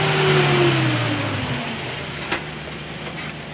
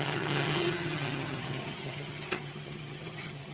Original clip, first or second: first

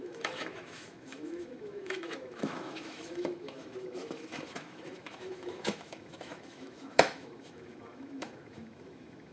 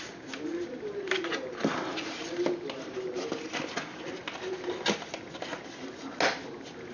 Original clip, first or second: second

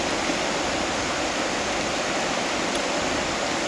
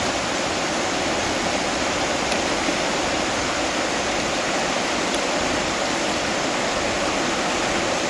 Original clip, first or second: first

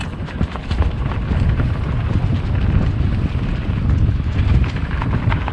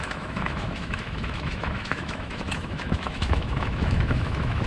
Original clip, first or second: first